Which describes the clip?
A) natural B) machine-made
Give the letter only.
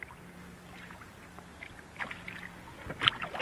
A